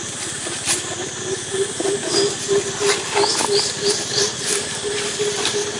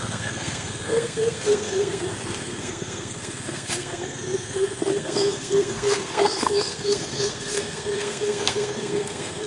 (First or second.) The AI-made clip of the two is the second